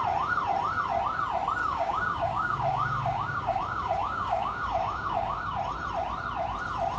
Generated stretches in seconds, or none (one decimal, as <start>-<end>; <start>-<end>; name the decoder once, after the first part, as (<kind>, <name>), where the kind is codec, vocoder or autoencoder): 1.6-5.6 (codec, DAC)